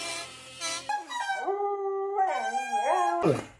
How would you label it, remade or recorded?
recorded